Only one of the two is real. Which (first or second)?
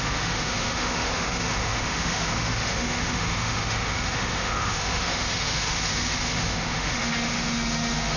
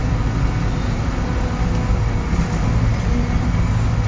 second